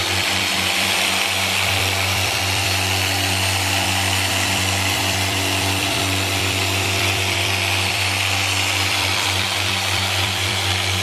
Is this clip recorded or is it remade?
remade